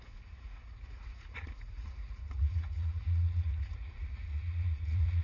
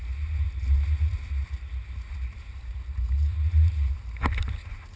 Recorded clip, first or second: second